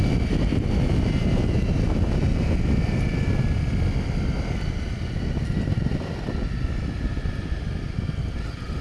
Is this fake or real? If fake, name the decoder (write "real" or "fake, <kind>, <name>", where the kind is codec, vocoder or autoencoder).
real